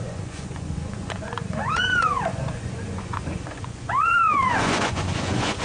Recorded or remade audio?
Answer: remade